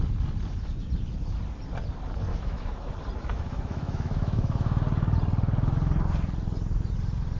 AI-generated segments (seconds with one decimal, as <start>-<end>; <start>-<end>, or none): 2.3-2.9; 3.3-4.8